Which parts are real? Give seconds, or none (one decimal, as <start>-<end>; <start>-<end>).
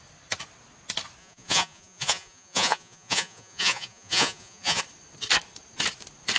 0.0-1.2; 4.8-6.4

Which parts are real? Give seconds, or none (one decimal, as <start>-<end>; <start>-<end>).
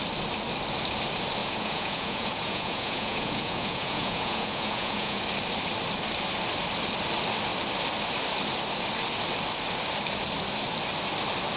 0.0-1.4; 5.2-11.6